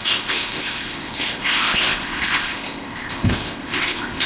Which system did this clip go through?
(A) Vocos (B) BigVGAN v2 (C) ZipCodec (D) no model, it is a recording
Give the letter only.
C